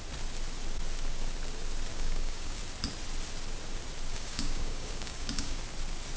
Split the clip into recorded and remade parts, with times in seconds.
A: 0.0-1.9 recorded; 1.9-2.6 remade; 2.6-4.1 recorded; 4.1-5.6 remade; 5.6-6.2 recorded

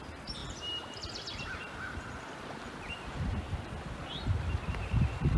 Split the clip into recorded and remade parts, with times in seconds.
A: 0.0-5.4 recorded